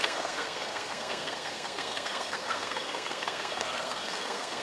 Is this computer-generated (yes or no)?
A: yes